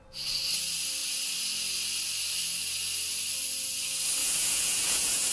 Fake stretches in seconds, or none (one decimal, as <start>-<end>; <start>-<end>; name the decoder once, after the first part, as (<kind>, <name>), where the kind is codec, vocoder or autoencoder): 4.2-5.3 (vocoder, Vocos)